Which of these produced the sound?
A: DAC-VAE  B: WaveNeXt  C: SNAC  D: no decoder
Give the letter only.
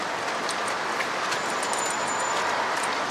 D